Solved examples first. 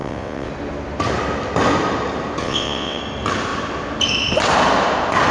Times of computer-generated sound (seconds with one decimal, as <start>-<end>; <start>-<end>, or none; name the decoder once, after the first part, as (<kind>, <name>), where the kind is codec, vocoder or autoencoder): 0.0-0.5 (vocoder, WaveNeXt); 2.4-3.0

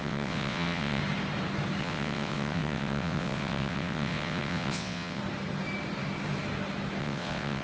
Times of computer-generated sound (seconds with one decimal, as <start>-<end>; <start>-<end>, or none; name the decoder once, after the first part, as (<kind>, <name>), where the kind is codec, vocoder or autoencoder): 0.0-1.0 (vocoder, WaveNeXt); 1.8-5.2; 7.0-7.6

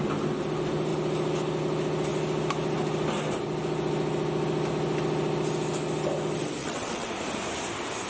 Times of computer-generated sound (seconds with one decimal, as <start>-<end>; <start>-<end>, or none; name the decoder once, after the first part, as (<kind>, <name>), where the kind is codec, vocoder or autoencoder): 6.6-7.1 (vocoder, WaveNeXt)

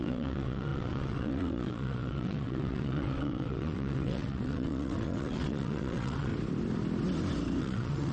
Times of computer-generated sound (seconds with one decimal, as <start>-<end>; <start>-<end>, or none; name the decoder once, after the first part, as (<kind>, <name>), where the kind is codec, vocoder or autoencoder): 0.0-6.3 (vocoder, WaveNeXt); 7.6-8.1